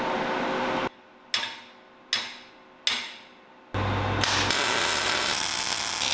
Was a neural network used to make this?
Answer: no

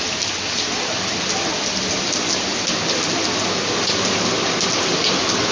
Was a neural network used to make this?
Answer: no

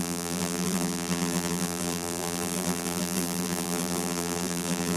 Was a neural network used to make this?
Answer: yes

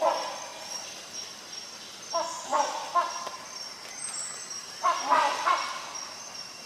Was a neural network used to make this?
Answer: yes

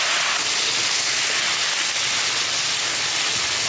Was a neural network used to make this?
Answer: no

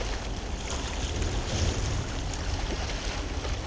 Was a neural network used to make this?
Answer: no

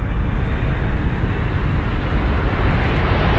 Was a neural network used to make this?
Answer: no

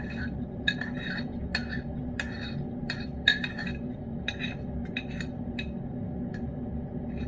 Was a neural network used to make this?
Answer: no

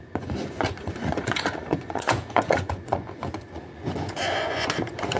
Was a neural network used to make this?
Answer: yes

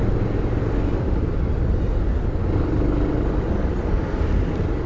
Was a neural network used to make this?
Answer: no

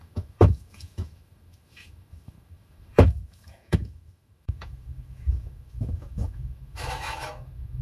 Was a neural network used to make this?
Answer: yes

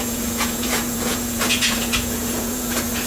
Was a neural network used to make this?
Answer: yes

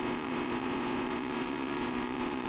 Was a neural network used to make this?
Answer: yes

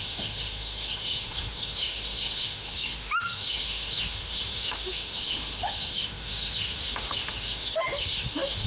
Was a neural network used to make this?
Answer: yes